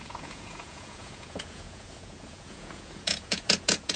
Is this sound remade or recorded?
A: remade